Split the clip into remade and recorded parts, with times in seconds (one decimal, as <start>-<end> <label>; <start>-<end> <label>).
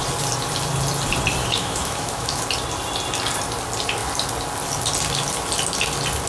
0.0-1.4 recorded; 1.4-2.4 remade; 2.4-6.3 recorded